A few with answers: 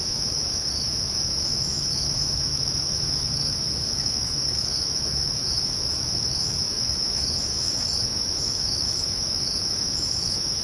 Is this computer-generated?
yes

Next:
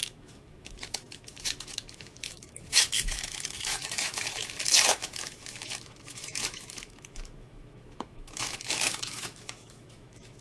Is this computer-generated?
yes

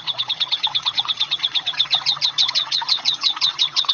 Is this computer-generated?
yes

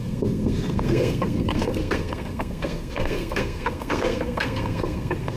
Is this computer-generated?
yes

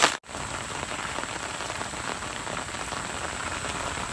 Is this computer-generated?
no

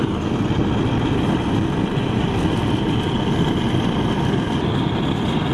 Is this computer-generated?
no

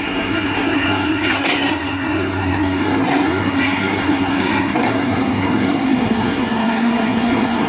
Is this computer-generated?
yes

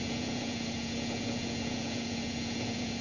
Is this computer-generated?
yes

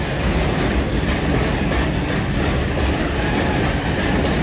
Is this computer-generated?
no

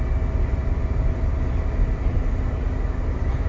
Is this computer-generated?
no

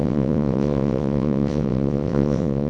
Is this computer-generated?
yes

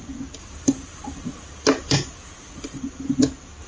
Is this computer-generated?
no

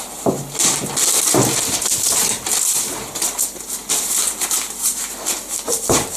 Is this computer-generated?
no